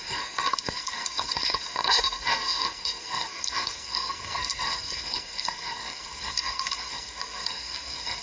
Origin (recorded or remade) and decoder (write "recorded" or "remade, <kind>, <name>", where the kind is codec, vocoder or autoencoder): remade, codec, SNAC